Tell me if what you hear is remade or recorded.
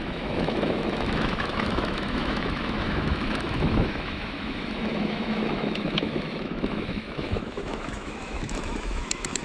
remade